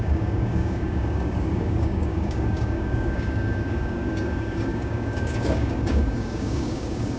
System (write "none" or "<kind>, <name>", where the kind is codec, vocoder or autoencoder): codec, DAC